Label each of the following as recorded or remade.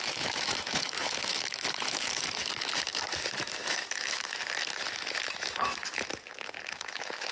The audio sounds remade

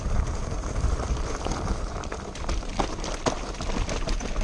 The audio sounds remade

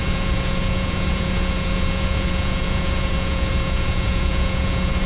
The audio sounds remade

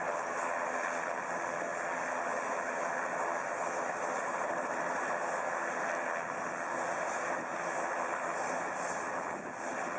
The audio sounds recorded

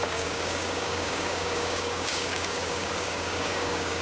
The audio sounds remade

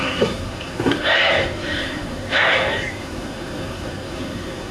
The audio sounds remade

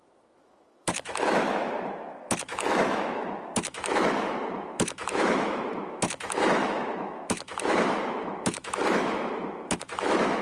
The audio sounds remade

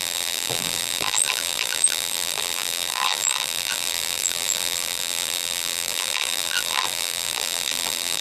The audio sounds remade